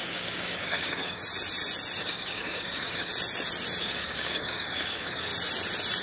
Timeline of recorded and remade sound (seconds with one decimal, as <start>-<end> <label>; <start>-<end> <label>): 0.0-1.2 remade; 1.2-2.0 recorded; 2.0-3.1 remade; 3.1-3.8 recorded; 3.8-5.3 remade; 5.3-6.0 recorded